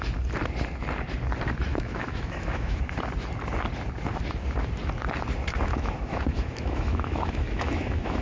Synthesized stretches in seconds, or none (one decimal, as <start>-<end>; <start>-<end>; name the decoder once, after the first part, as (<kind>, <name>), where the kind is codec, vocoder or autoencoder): 1.7-2.8 (autoencoder, DAC-VAE); 5.7-8.2